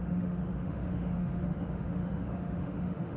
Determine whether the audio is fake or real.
fake